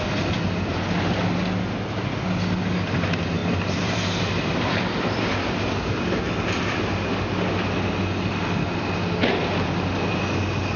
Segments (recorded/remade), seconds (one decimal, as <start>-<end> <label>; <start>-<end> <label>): 0.0-3.4 recorded; 3.4-5.5 remade; 5.5-10.8 recorded